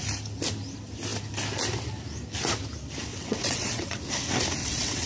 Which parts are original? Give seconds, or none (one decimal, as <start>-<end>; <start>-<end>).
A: 0.0-3.1; 4.0-4.6